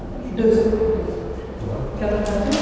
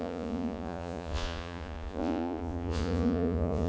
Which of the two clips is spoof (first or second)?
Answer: second